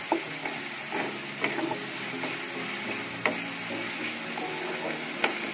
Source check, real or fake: real